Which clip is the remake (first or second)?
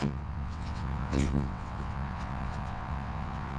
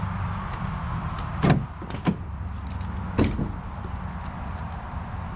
first